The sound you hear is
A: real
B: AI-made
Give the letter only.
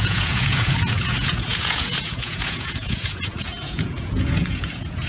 B